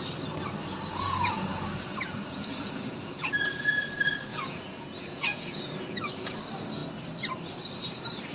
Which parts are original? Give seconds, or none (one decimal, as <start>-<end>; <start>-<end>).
0.0-0.9; 3.7-4.3; 6.3-8.3